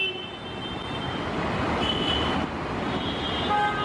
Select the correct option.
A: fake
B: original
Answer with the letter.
B